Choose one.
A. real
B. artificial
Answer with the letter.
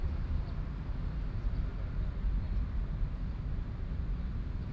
A